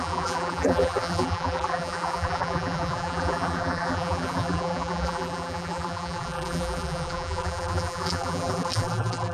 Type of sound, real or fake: fake